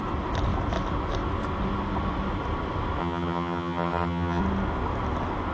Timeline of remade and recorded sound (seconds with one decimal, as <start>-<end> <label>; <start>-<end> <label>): 0.0-3.0 recorded; 3.0-4.4 remade; 4.4-5.5 recorded